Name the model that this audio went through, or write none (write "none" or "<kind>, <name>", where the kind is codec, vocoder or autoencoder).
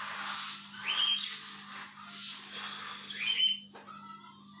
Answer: none